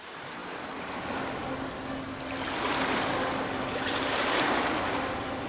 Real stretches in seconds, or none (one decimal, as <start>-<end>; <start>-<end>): 0.4-3.7